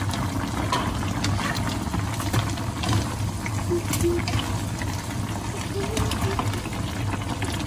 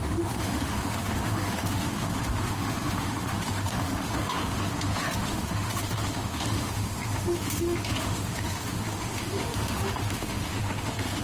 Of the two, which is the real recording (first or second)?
first